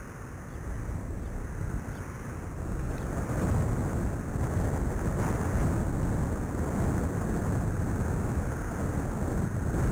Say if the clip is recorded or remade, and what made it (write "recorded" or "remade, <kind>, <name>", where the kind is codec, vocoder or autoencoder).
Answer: recorded